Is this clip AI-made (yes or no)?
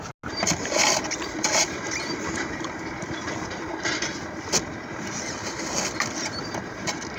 no